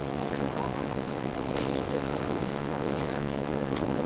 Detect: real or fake fake